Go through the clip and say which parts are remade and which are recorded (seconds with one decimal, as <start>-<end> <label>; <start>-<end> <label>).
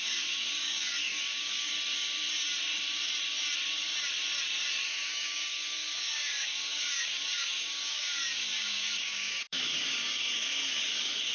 0.0-1.7 remade; 1.7-4.9 recorded; 4.9-11.3 remade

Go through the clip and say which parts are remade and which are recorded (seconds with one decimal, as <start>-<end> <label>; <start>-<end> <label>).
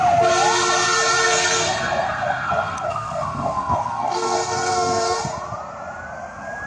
0.0-1.2 recorded; 1.2-5.2 remade; 5.2-6.7 recorded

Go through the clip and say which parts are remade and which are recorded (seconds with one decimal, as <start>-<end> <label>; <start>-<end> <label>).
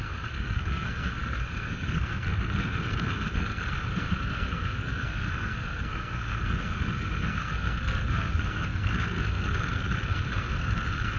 0.0-11.2 remade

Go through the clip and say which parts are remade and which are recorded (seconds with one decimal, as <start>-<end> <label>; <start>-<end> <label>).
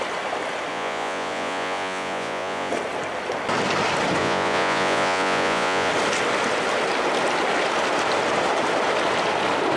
0.0-0.7 recorded; 0.7-2.7 remade; 2.7-4.2 recorded; 4.2-5.9 remade; 5.9-9.8 recorded